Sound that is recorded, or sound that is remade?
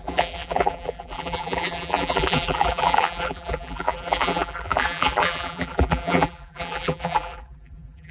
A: remade